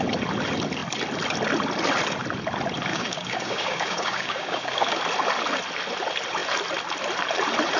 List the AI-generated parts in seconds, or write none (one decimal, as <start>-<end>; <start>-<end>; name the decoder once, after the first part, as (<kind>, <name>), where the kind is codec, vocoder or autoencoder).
2.9-5.0 (codec, DAC)